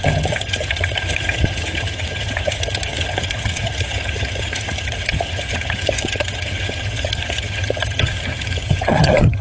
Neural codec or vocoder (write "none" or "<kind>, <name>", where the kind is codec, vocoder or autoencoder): vocoder, HiFi-GAN